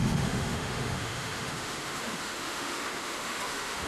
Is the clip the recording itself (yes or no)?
no